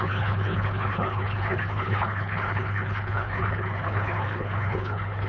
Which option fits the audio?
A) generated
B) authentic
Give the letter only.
A